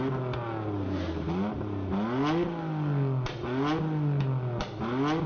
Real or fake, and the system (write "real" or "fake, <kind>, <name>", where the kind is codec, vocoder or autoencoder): real